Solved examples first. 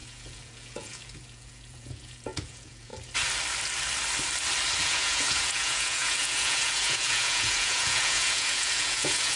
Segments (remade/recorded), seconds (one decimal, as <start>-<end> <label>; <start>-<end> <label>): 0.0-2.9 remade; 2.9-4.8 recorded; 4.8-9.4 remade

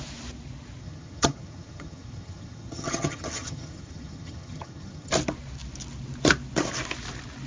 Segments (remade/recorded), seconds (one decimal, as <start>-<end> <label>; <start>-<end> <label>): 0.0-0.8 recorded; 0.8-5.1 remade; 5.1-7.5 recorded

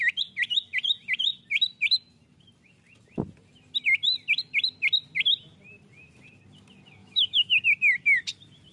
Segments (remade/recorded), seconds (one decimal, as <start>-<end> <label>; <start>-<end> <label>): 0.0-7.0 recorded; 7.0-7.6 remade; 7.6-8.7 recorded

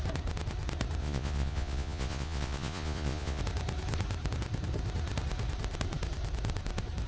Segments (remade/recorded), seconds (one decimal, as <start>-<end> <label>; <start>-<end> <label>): 0.0-1.0 recorded; 1.0-3.4 remade; 3.4-7.1 recorded

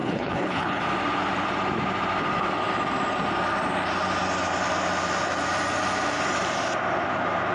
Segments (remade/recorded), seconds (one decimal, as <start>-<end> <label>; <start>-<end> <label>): 0.0-0.8 remade; 0.8-7.5 recorded

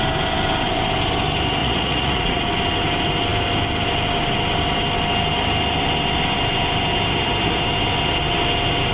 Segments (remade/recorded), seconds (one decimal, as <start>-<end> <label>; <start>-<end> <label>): 0.0-1.6 recorded; 1.6-2.4 remade; 2.4-8.9 recorded